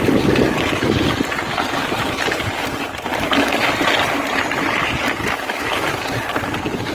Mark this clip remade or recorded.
recorded